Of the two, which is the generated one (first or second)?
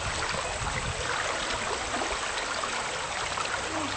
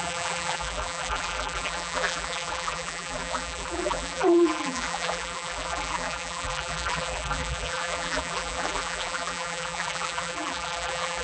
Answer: second